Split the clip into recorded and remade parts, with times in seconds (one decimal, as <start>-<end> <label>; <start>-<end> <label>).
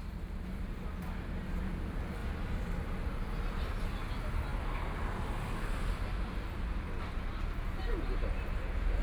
0.0-9.0 recorded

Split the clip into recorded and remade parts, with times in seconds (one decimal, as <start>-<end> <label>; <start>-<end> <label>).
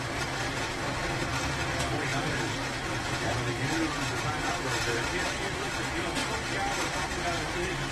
0.0-5.0 recorded; 5.0-5.8 remade; 5.8-6.2 recorded; 6.2-7.0 remade; 7.0-7.9 recorded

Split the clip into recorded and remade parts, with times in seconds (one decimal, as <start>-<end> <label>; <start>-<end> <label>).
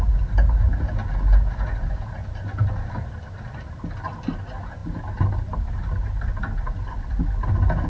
0.0-1.7 recorded; 1.7-3.8 remade; 3.8-7.9 recorded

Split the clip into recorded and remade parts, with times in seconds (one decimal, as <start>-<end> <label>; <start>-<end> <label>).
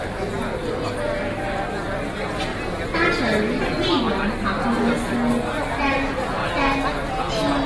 0.0-7.7 recorded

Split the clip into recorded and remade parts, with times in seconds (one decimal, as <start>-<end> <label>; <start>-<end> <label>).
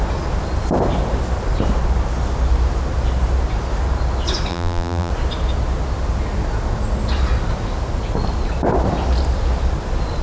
0.0-4.5 recorded; 4.5-5.1 remade; 5.1-10.2 recorded